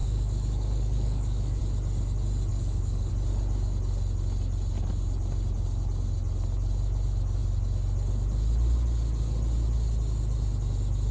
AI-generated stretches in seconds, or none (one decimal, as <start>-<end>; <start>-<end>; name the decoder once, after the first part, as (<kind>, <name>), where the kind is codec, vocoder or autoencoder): 0.0-1.6 (codec, DAC); 2.5-3.1